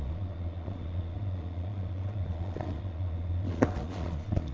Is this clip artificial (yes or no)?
yes